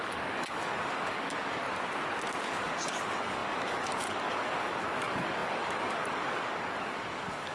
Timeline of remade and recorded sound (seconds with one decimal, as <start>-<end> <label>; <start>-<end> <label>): 0.0-1.6 remade; 1.6-2.4 recorded; 2.4-7.5 remade